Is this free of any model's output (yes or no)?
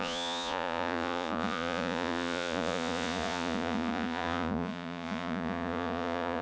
no